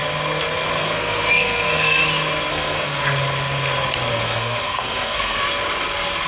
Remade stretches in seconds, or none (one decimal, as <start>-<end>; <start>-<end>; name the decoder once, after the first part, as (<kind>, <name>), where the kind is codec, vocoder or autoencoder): 0.8-2.0 (codec, SNAC); 2.5-3.0; 4.1-5.4